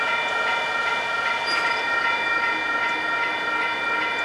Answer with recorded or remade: recorded